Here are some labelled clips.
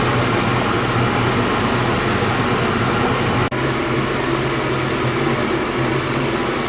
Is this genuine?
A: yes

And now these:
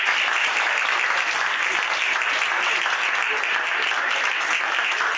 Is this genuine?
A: yes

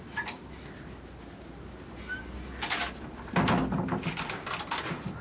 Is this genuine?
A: yes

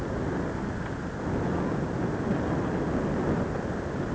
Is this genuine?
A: yes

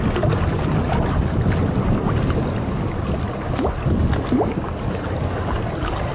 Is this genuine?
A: yes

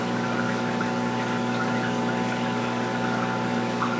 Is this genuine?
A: no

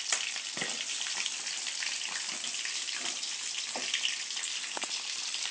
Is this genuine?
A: yes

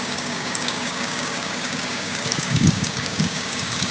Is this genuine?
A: no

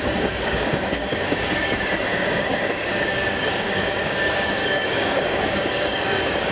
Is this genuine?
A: no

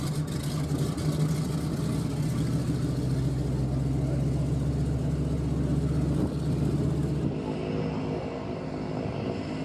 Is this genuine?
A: yes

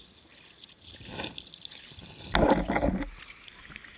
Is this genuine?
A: yes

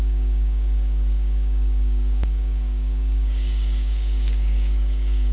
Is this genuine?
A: no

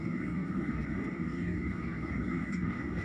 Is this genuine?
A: no